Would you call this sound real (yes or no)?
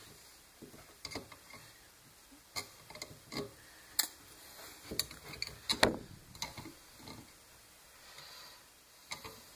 yes